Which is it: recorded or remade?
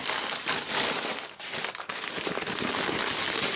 recorded